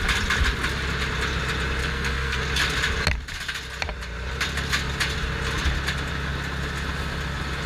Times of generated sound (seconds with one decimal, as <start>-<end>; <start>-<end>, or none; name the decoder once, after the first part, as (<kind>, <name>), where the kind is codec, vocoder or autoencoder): 1.8-2.4 (codec, SNAC)

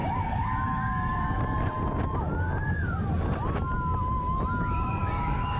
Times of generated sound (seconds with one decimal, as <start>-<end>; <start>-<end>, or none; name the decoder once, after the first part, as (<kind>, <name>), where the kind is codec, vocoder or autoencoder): 0.0-1.4 (codec, DAC); 5.0-5.6